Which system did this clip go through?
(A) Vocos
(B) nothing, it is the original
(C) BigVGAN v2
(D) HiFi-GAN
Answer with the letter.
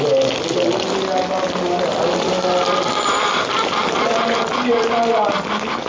B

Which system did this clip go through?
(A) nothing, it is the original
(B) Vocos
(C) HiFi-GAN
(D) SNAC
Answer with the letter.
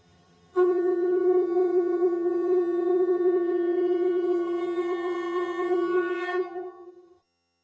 C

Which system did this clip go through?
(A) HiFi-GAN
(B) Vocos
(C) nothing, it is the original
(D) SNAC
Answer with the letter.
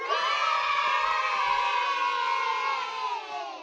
C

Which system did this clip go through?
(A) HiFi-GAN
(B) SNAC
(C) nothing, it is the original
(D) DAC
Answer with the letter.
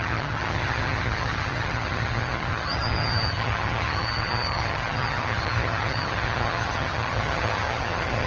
A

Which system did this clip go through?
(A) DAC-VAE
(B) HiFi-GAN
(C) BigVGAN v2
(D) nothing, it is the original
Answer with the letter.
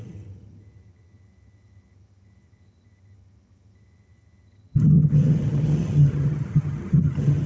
B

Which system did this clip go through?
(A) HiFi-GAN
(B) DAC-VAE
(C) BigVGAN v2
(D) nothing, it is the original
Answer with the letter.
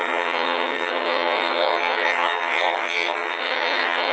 A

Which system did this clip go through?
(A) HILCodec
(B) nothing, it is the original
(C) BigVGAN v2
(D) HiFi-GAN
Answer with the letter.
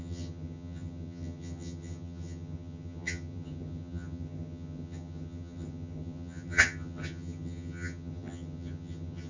D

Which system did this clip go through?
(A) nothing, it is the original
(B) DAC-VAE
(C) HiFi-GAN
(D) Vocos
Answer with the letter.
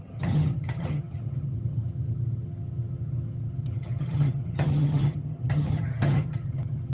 C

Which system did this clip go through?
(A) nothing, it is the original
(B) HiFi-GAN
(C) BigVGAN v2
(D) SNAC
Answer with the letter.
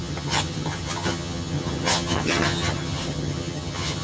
B